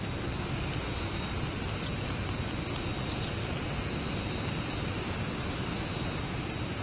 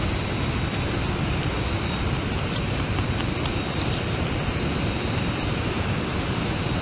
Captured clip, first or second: first